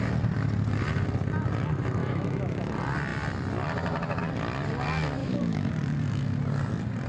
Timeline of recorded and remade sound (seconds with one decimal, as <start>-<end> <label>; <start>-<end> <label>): 0.0-2.0 recorded; 2.0-2.6 remade; 2.6-5.2 recorded; 5.2-5.7 remade; 5.7-7.1 recorded